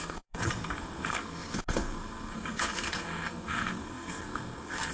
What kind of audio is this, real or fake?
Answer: fake